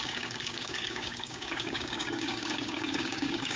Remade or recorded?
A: remade